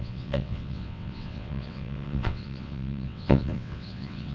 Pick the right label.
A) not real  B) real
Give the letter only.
A